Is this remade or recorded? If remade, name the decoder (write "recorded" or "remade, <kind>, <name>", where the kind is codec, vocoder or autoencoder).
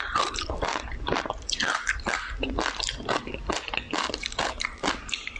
remade, vocoder, BigVGAN v2